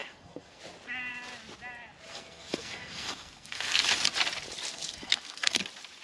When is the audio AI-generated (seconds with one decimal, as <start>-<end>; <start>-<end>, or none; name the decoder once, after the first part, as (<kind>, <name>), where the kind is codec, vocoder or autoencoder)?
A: 0.0-0.6 (codec, SNAC); 2.1-3.9; 4.7-5.6